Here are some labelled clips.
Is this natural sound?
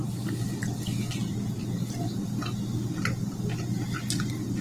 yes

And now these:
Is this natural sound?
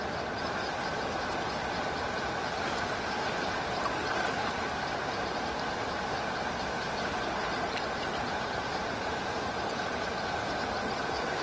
yes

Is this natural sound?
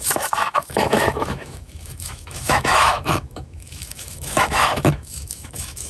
no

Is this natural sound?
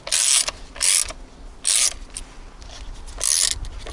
yes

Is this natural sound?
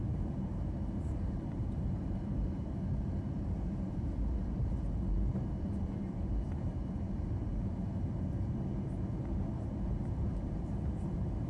no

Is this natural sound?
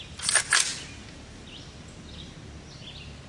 yes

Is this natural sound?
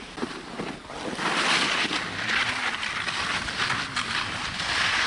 yes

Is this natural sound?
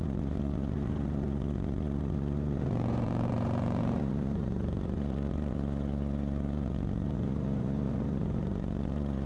no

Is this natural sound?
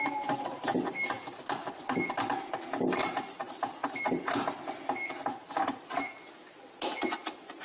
yes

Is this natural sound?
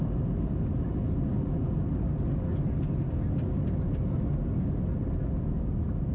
yes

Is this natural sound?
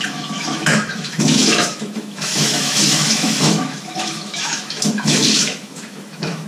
no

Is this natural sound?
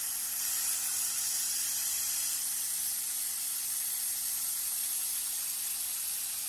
no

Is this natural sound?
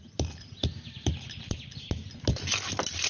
yes